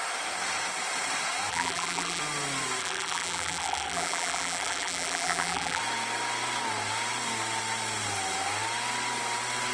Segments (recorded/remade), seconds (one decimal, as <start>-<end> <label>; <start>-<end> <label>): 0.0-1.5 recorded; 1.5-2.2 remade; 2.2-2.8 recorded; 2.8-5.8 remade; 5.8-9.7 recorded